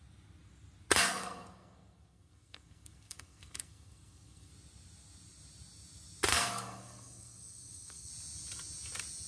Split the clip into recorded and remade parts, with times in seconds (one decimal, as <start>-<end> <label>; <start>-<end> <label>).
0.0-1.1 recorded; 1.1-4.5 remade; 4.5-6.3 recorded; 6.3-8.1 remade; 8.1-9.3 recorded

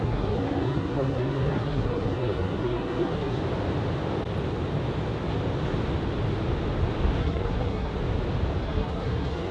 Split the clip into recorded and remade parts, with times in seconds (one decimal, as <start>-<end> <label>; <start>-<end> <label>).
0.0-3.4 remade; 3.4-7.2 recorded; 7.2-7.9 remade; 7.9-8.6 recorded; 8.6-9.5 remade

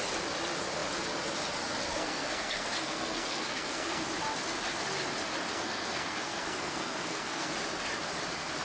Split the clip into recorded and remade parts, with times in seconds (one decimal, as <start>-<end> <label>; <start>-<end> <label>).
0.0-1.9 recorded; 1.9-4.0 remade; 4.0-5.5 recorded; 5.5-7.5 remade; 7.5-8.6 recorded

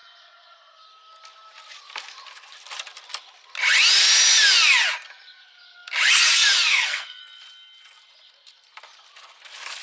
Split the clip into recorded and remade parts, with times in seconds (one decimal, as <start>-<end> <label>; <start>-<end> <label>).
0.0-6.7 recorded; 6.7-7.2 remade; 7.2-9.8 recorded

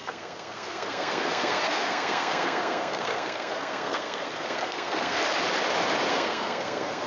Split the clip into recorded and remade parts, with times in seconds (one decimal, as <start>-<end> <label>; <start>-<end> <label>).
0.0-5.2 remade; 5.2-6.1 recorded; 6.1-7.1 remade

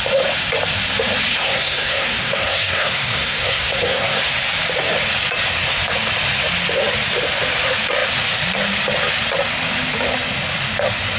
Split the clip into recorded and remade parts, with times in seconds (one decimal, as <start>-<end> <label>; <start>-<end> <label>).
0.0-1.3 recorded; 1.3-4.3 remade; 4.3-11.2 recorded

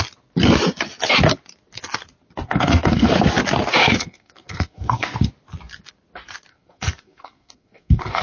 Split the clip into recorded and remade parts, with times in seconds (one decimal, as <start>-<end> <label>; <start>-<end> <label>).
0.0-2.4 recorded; 2.4-3.1 remade; 3.1-3.8 recorded; 3.8-5.3 remade; 5.3-6.5 recorded; 6.5-8.2 remade